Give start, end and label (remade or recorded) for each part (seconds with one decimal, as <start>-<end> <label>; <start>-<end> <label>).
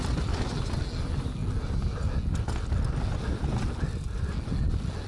0.0-5.1 recorded